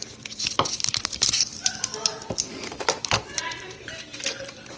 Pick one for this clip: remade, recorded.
remade